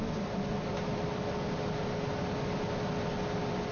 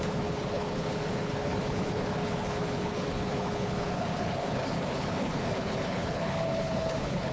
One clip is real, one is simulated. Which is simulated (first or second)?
second